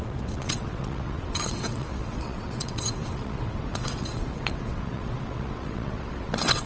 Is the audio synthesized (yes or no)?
yes